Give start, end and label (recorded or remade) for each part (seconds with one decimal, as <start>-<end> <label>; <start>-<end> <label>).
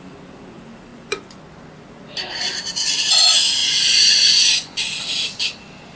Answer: 0.0-0.9 recorded; 0.9-1.5 remade; 1.5-3.6 recorded; 3.6-5.0 remade; 5.0-6.0 recorded